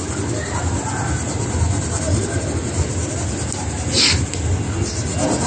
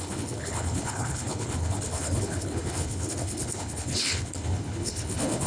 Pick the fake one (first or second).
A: second